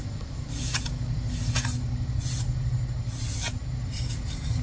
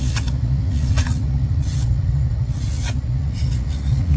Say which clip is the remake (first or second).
second